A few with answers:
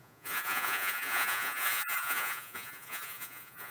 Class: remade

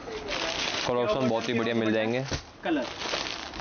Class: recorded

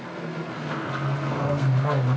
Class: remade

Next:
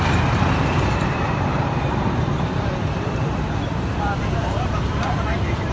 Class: remade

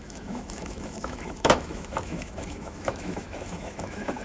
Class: remade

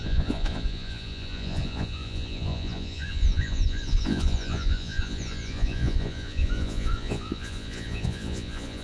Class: remade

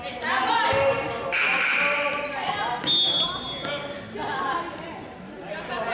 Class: recorded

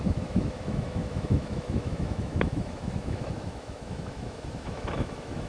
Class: remade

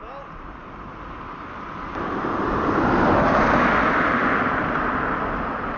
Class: recorded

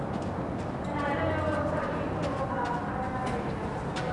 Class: recorded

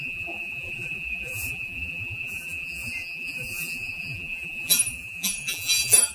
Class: remade